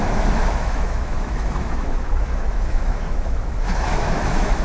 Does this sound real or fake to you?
fake